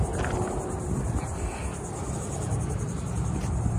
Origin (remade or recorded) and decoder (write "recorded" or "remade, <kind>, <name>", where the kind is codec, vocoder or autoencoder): recorded